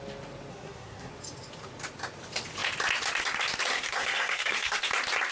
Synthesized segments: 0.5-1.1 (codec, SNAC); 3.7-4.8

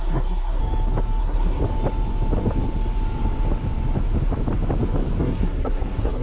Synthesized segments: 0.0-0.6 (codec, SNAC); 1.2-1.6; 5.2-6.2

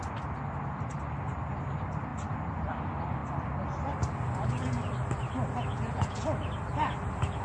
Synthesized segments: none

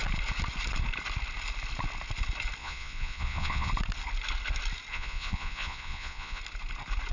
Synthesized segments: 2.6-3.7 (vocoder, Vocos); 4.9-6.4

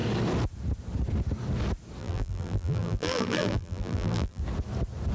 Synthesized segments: 2.0-4.4 (vocoder, BigVGAN v2)

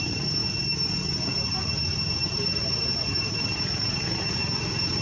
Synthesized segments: none